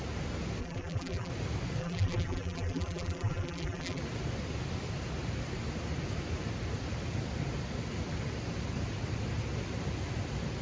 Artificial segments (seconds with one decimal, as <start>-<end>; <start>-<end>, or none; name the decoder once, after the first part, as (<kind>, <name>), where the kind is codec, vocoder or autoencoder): 0.6-1.3 (vocoder, BigVGAN v2); 1.8-4.0